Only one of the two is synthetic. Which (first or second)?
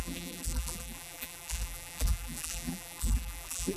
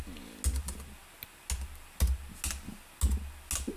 first